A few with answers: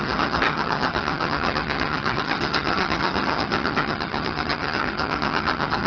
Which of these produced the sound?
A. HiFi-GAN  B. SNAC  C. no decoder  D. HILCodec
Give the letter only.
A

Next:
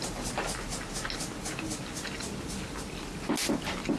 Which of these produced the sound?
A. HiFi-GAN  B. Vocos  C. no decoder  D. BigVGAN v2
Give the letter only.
C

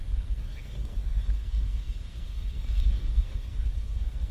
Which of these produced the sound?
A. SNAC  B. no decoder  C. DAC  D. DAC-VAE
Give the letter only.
A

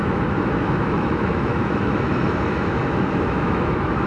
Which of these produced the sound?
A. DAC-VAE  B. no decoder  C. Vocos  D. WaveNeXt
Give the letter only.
A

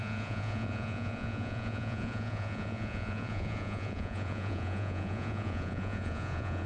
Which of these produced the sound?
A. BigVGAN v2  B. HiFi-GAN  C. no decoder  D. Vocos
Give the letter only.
D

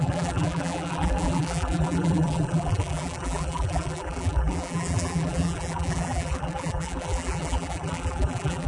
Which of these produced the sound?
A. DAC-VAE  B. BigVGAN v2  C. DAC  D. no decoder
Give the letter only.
B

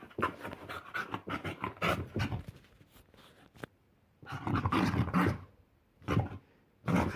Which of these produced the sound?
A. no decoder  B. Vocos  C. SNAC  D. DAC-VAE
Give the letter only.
A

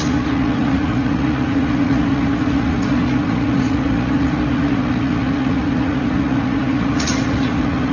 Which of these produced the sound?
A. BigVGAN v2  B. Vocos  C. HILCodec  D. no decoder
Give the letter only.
B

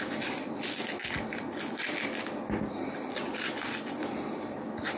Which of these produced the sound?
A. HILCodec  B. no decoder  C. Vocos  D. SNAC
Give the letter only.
B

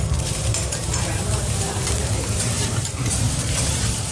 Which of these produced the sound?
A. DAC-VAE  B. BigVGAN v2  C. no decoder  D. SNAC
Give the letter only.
B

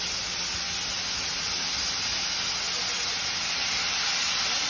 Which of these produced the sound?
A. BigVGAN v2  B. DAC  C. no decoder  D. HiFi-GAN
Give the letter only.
C